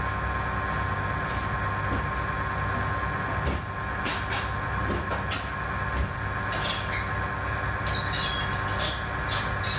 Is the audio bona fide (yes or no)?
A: yes